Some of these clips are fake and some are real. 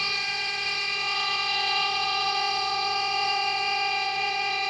fake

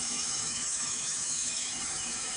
fake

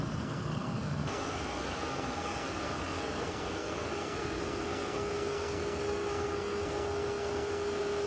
fake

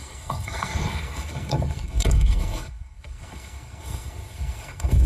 fake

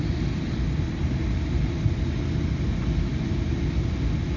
real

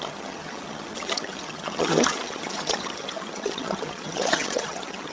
fake